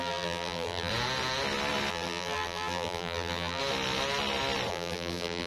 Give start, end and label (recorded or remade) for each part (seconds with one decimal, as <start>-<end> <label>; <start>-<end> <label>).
0.0-0.9 remade; 0.9-1.9 recorded; 1.9-3.6 remade; 3.6-4.7 recorded; 4.7-5.5 remade